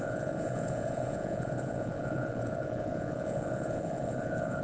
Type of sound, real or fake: fake